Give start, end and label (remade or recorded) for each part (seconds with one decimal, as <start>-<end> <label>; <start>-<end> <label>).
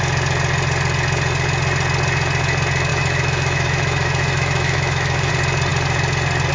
0.0-2.9 recorded; 2.9-5.3 remade; 5.3-6.5 recorded